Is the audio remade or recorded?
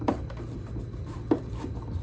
recorded